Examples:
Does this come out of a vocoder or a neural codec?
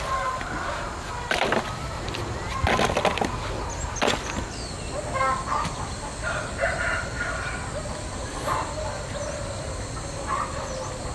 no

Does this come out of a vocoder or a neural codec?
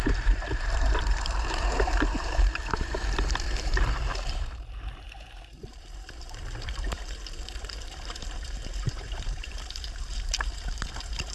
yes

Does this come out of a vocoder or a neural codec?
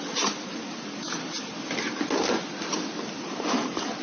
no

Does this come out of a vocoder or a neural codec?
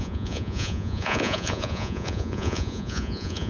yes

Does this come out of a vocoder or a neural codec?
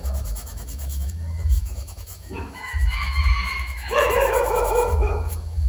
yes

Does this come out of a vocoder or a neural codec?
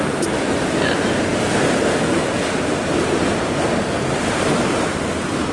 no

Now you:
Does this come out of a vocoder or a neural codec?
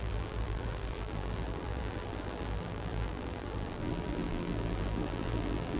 yes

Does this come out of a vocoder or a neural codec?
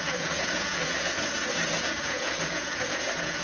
yes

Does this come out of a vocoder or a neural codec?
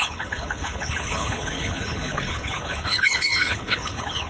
yes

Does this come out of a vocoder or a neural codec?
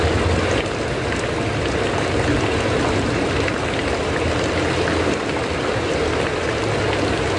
no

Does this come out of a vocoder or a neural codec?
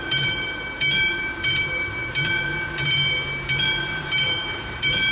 yes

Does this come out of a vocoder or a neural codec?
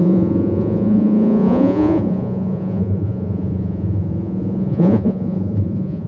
yes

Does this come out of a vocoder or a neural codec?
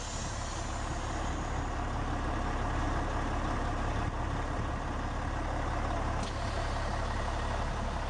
no